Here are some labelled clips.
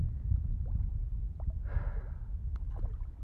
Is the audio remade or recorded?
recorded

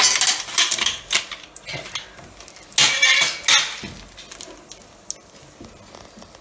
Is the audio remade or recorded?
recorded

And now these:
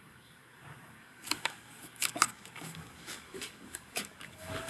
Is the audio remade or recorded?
remade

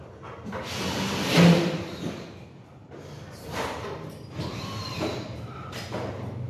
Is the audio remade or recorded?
recorded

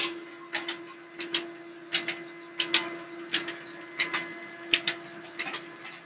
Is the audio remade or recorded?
recorded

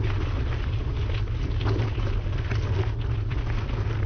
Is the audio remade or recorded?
recorded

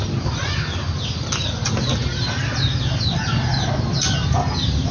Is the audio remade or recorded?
recorded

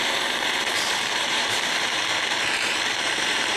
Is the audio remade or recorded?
remade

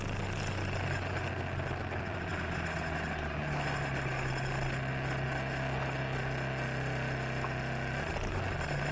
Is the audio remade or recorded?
recorded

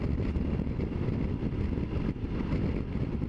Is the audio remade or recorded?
recorded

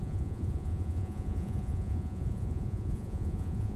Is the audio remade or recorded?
remade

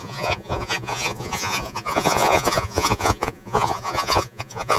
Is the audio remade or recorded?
remade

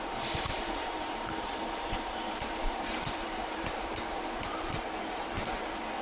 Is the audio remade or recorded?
remade